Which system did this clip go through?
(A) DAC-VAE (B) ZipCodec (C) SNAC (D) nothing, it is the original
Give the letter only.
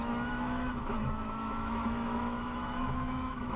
A